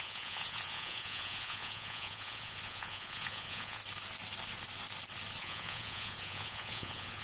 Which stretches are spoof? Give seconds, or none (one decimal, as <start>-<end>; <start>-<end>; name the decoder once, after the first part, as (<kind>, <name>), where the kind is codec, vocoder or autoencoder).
0.0-3.8 (vocoder, Vocos); 5.4-7.2

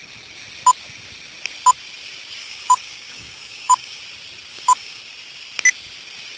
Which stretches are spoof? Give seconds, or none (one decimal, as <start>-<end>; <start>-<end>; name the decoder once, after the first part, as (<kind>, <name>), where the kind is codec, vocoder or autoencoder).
2.4-4.0 (codec, DAC); 4.5-5.0